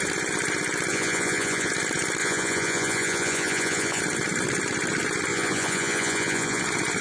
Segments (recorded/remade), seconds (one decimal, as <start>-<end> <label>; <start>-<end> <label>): 0.0-0.9 recorded; 0.9-1.7 remade; 1.7-2.2 recorded; 2.2-4.0 remade; 4.0-5.3 recorded; 5.3-6.6 remade; 6.6-7.0 recorded